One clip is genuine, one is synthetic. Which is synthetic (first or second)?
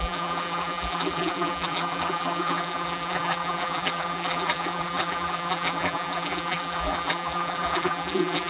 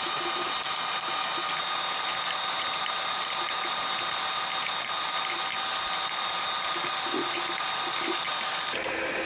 first